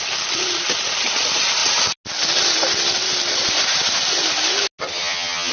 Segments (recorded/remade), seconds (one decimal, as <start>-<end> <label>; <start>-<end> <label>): 0.0-4.9 recorded; 4.9-5.5 remade